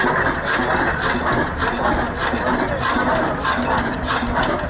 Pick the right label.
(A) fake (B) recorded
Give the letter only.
B